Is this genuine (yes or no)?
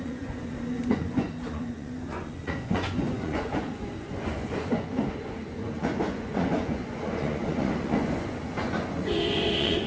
no